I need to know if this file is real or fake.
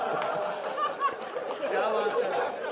real